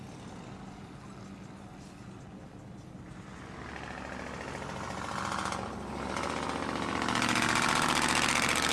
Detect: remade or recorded recorded